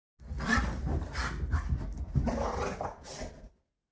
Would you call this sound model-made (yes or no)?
no